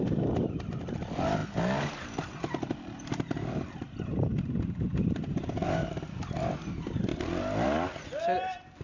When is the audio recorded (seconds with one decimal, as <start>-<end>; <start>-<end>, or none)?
7.1-8.8